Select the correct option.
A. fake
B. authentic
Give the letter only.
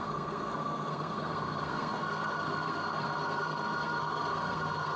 A